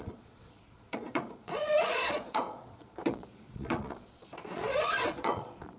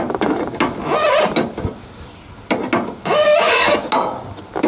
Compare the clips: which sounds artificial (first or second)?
first